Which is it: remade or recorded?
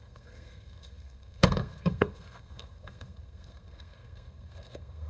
remade